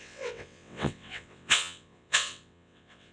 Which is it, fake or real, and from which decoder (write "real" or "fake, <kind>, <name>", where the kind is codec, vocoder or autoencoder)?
fake, vocoder, WaveNeXt